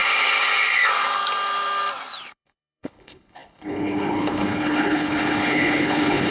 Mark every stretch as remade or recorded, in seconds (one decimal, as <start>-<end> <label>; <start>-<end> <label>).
0.0-2.3 recorded; 2.3-6.3 remade